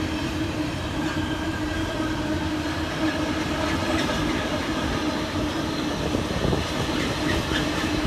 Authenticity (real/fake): real